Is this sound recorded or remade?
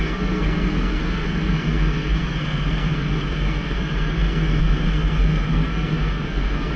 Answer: remade